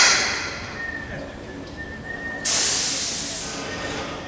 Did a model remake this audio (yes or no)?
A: no